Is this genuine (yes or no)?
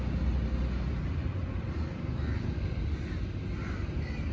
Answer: yes